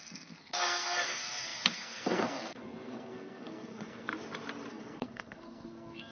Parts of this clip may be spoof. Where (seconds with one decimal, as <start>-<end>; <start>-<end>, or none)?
0.0-4.1; 4.7-6.1